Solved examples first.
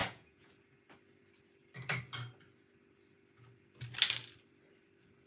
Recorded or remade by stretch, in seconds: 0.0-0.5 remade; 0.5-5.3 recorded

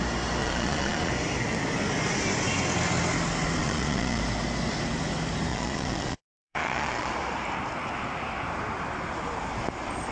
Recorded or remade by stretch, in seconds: 0.0-0.4 recorded; 0.4-1.1 remade; 1.1-3.6 recorded; 3.6-4.2 remade; 4.2-5.5 recorded; 5.5-7.1 remade; 7.1-10.1 recorded

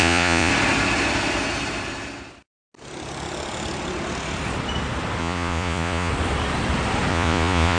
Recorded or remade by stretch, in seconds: 0.0-0.5 remade; 0.5-5.2 recorded; 5.2-6.1 remade; 6.1-7.1 recorded; 7.1-7.8 remade

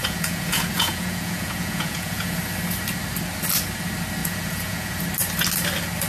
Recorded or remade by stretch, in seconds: 0.0-2.4 remade; 2.4-4.2 recorded; 4.2-5.0 remade; 5.0-6.1 recorded

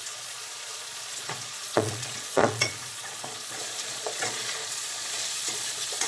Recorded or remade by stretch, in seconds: 0.0-6.1 remade

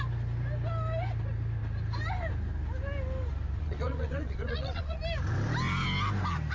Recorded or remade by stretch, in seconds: 0.0-3.6 recorded; 3.6-5.0 remade; 5.0-6.5 recorded